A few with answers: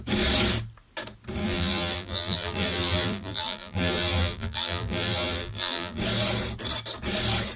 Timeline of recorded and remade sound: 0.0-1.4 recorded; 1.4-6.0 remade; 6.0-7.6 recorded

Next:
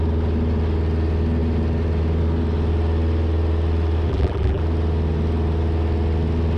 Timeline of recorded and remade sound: 0.0-4.1 recorded; 4.1-4.6 remade; 4.6-6.6 recorded

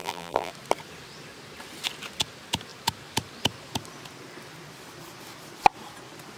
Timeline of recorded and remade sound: 0.0-0.5 remade; 0.5-6.4 recorded

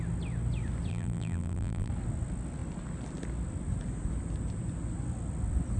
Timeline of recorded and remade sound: 0.0-0.9 recorded; 0.9-1.9 remade; 1.9-5.8 recorded